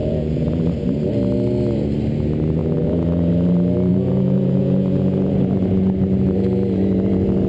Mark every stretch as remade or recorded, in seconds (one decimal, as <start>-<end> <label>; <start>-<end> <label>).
0.0-0.6 remade; 0.6-2.6 recorded; 2.6-3.3 remade; 3.3-3.9 recorded; 3.9-5.3 remade; 5.3-7.5 recorded